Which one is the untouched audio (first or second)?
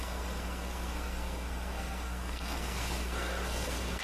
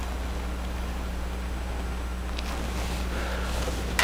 second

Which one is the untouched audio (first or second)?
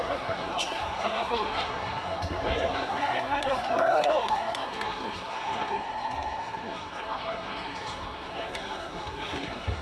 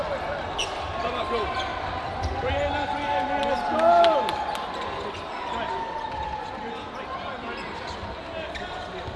second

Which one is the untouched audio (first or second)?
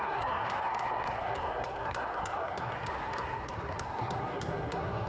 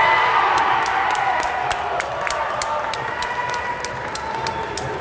second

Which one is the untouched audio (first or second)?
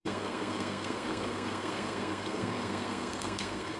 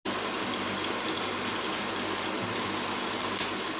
second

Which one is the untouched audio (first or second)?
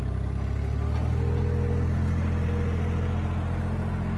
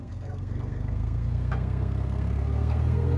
first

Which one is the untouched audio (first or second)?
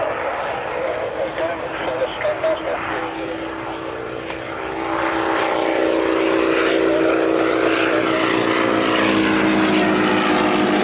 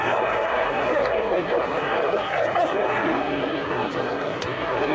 first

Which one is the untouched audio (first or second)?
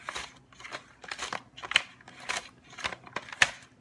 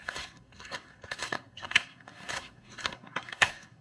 first